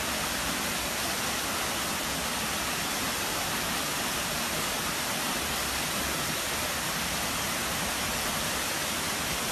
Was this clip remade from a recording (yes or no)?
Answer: yes